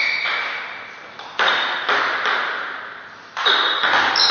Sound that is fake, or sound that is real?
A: real